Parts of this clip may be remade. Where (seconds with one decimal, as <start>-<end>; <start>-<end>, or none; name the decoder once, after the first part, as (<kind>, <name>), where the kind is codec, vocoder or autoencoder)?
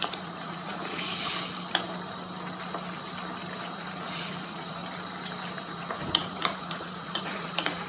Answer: 0.0-1.3 (vocoder, Vocos); 3.7-4.8; 5.6-7.9